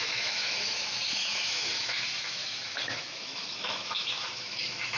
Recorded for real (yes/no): no